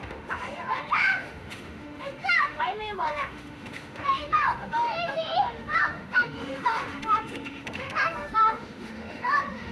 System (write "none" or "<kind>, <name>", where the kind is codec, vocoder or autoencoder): autoencoder, DAC-VAE